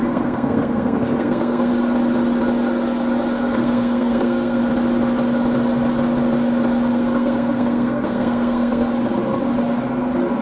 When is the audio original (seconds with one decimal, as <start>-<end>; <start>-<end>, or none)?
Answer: 1.7-3.5; 4.6-6.9; 8.9-10.4